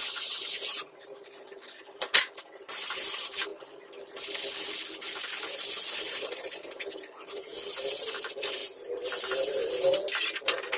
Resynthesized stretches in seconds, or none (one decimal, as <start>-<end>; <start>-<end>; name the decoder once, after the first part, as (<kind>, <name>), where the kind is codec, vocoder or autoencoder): 0.0-3.5 (vocoder, BigVGAN v2); 6.0-7.5; 8.0-8.6; 9.2-9.6; 10.3-10.8